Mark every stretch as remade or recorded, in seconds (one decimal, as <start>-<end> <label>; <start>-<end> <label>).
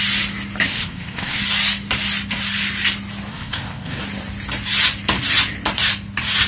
0.0-0.7 recorded; 0.7-1.4 remade; 1.4-3.3 recorded; 3.3-4.0 remade; 4.0-6.5 recorded